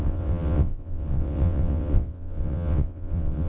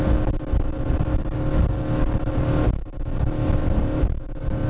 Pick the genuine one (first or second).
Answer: second